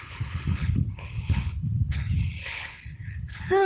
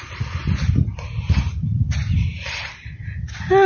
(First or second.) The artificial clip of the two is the first